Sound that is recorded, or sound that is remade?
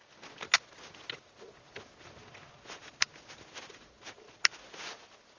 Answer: recorded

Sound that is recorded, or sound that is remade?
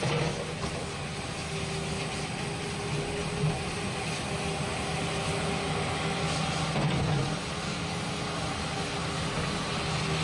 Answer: recorded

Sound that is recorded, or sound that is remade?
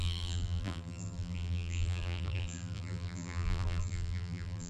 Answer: remade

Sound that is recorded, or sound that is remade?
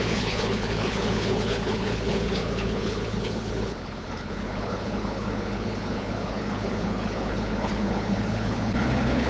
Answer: remade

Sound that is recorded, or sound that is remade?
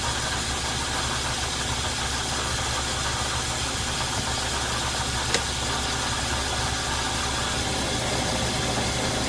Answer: recorded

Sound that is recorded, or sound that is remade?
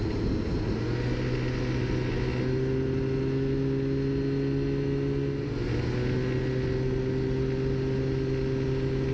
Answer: recorded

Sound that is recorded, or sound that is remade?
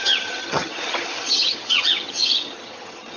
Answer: remade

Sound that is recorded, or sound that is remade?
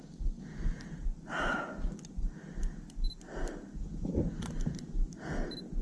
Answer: recorded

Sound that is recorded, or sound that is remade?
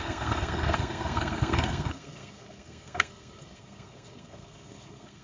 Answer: remade